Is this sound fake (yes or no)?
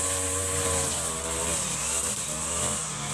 no